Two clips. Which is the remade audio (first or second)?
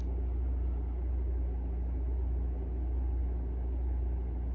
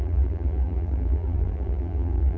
second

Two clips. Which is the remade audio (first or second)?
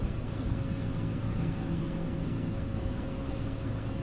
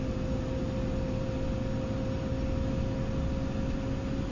first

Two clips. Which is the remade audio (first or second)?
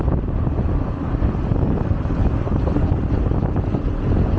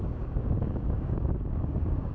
second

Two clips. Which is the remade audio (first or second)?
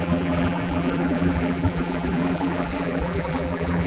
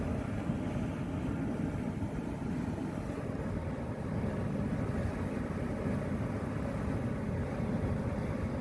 first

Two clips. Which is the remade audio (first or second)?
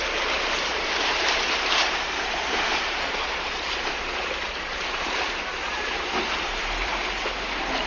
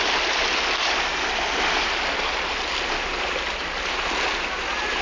first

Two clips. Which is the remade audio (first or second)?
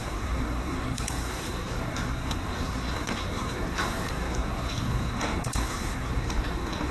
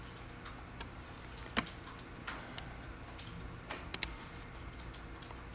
first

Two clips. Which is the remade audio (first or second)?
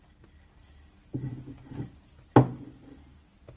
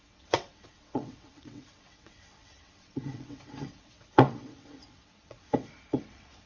second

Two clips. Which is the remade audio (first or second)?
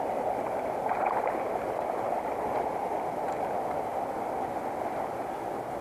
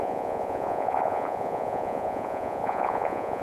second